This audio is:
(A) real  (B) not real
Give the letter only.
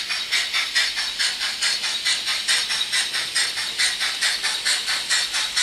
A